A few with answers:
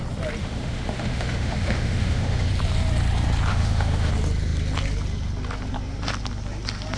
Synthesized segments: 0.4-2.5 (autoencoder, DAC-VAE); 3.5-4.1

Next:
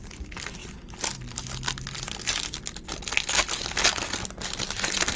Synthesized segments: none

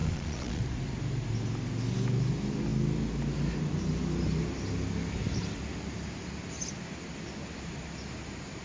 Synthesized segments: 0.0-0.6 (vocoder, Vocos)

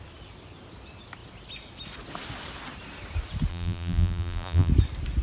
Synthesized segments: 3.5-4.7 (vocoder, BigVGAN v2)